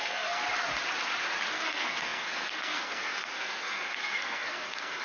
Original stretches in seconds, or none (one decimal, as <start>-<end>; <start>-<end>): 0.4-1.5